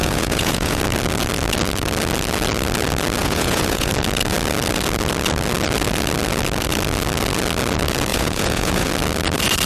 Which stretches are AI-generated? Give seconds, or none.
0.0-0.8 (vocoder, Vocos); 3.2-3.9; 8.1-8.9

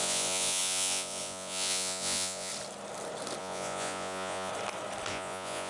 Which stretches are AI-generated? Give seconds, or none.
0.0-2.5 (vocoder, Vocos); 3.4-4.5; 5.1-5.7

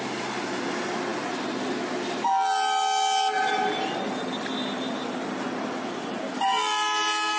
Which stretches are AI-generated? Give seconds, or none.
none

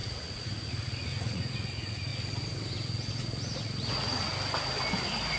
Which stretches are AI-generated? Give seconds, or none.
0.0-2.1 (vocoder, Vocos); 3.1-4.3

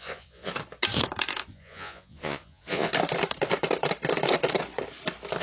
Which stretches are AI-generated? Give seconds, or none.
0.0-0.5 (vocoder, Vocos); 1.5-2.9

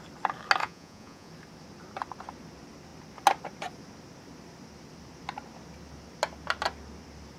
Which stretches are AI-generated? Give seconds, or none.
0.6-1.3 (vocoder, Vocos)

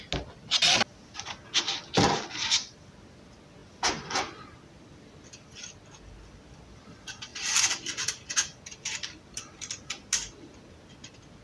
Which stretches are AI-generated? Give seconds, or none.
none

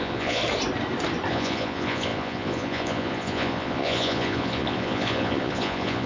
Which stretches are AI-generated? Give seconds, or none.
0.0-0.4 (vocoder, Vocos); 1.3-6.1